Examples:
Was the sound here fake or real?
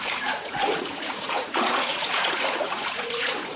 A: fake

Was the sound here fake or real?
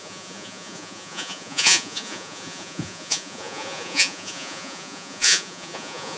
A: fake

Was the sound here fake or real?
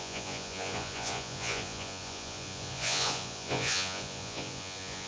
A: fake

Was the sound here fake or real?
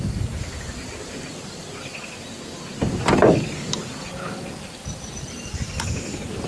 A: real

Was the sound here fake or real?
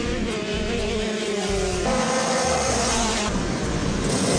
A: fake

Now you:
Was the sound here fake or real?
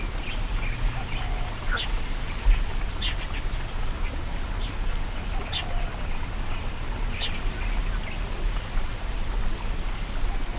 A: real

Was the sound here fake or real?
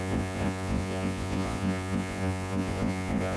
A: fake